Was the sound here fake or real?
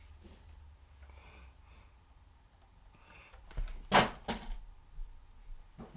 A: real